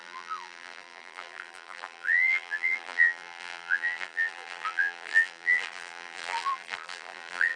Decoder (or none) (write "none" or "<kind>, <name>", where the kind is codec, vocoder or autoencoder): vocoder, BigVGAN v2